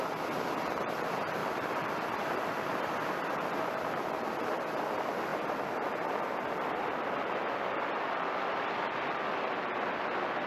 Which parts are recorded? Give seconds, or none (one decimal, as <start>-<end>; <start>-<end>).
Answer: 0.0-1.4; 2.6-10.5